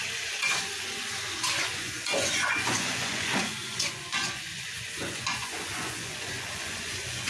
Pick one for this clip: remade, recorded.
remade